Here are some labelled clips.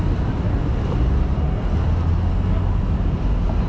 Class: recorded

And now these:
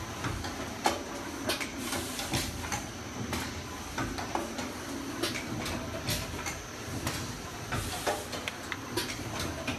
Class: recorded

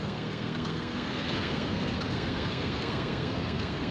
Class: remade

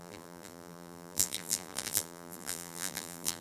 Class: remade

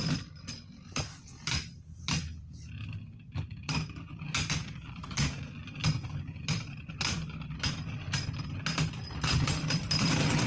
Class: remade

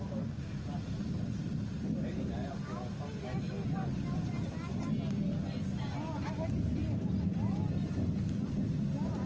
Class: recorded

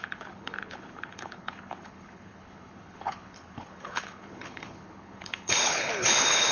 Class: remade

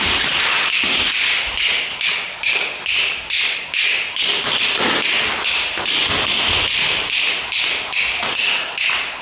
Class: recorded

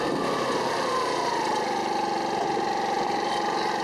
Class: recorded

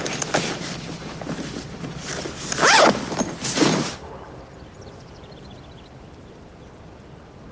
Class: remade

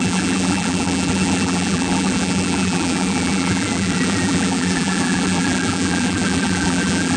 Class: remade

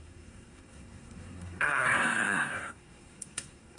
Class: remade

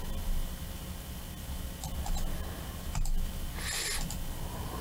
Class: recorded